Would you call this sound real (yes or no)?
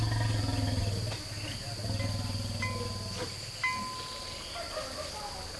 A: yes